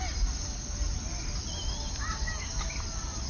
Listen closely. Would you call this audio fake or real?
real